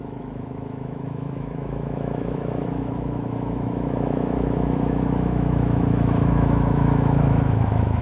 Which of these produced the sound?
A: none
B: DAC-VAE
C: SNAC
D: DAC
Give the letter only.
B